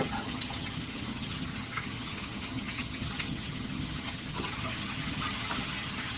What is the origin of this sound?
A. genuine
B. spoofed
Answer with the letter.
B